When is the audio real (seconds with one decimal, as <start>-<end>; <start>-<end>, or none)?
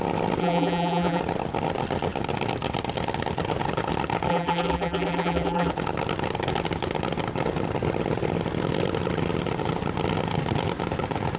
0.0-0.4; 1.2-4.3; 5.7-11.4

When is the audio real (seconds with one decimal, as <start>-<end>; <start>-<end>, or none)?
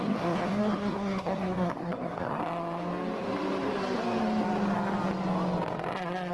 2.4-6.3